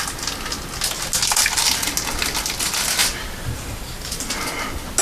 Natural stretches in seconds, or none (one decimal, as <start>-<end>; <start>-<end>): 0.0-3.0; 4.4-5.0